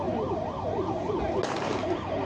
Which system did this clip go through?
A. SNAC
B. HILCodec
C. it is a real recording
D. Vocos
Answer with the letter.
C